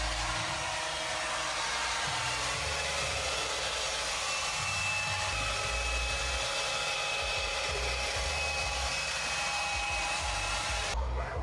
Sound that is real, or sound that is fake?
real